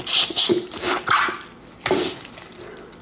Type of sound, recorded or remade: recorded